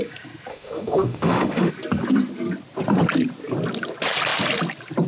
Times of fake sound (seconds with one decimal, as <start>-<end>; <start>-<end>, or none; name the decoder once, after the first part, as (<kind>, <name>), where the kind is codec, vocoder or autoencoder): 0.5-1.7 (autoencoder, DAC-VAE)